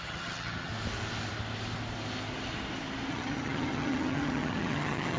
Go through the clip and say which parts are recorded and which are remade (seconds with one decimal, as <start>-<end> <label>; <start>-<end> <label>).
0.0-0.7 remade; 0.7-3.1 recorded; 3.1-5.2 remade